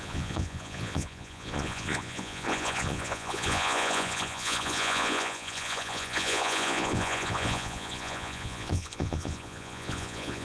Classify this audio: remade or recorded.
remade